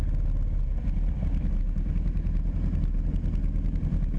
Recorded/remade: recorded